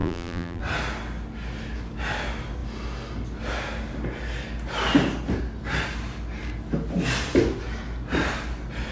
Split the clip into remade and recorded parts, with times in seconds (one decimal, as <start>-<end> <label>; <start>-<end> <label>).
0.0-0.6 remade; 0.6-8.9 recorded